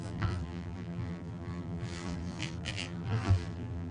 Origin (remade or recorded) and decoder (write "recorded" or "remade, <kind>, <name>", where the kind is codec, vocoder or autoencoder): remade, vocoder, BigVGAN v2